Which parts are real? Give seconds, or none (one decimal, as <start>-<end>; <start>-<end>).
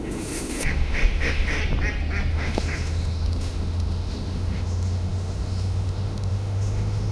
1.6-2.3